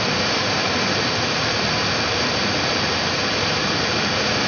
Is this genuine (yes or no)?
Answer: no